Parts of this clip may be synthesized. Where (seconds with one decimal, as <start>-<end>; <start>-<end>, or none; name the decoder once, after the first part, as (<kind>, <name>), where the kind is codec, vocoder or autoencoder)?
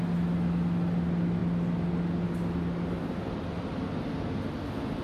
none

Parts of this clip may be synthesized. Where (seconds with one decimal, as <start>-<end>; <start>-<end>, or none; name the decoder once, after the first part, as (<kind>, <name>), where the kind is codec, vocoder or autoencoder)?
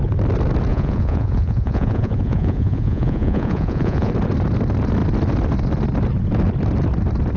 0.7-4.1 (vocoder, Vocos)